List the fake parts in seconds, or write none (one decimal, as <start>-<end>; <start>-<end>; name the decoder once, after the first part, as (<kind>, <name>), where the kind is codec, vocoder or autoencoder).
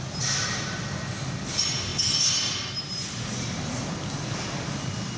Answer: none